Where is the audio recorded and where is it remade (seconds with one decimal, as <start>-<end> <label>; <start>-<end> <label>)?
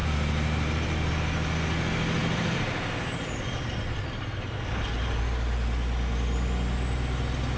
0.0-1.1 remade; 1.1-2.2 recorded; 2.2-4.6 remade; 4.6-7.6 recorded